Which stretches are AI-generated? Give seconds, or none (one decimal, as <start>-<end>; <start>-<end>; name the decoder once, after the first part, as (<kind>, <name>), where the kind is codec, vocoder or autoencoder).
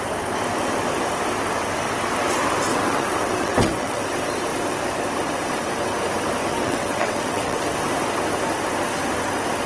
2.7-4.0 (vocoder, WaveNeXt); 6.5-7.6